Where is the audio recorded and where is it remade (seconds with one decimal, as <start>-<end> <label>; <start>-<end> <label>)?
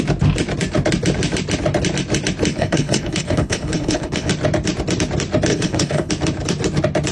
0.0-2.5 recorded; 2.5-4.3 remade; 4.3-5.5 recorded; 5.5-6.1 remade; 6.1-7.1 recorded